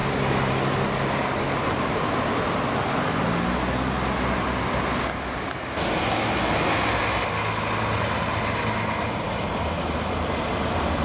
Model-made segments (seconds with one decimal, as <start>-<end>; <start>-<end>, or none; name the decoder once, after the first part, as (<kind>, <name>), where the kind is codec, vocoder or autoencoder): none